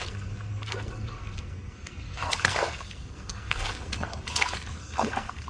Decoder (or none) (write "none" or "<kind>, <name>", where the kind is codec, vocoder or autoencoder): codec, SNAC